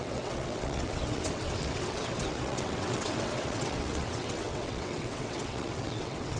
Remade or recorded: remade